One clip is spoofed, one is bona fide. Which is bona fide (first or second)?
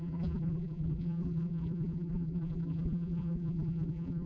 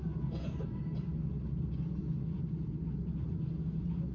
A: second